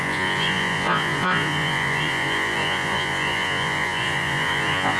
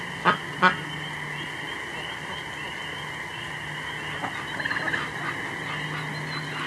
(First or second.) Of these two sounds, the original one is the second